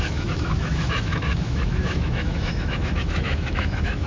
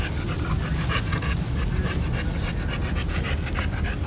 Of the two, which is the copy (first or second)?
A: first